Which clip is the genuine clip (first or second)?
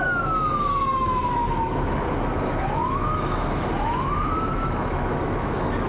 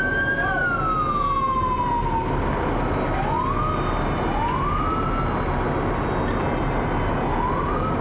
second